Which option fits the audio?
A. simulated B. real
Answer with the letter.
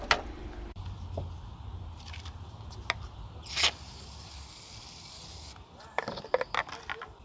B